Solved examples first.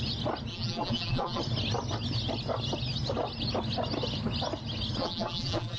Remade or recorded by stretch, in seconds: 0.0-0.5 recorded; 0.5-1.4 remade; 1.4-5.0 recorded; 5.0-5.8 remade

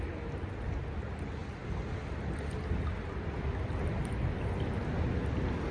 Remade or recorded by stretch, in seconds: 0.0-5.7 recorded

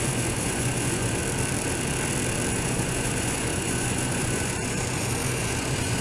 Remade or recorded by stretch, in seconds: 0.0-1.2 remade; 1.2-2.5 recorded; 2.5-6.0 remade

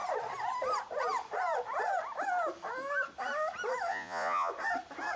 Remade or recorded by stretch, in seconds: 0.0-3.9 recorded; 3.9-4.5 remade; 4.5-5.2 recorded

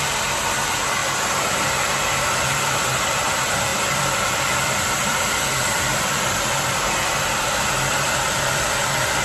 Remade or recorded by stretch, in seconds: 0.0-1.0 remade; 1.0-1.8 recorded; 1.8-9.2 remade

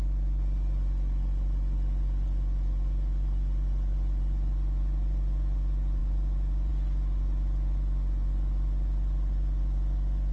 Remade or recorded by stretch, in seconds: 0.0-6.0 recorded; 6.0-6.7 remade; 6.7-10.3 recorded

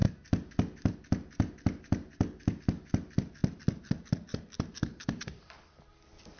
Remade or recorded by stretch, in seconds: 0.0-3.4 recorded; 3.4-5.9 remade; 5.9-6.4 recorded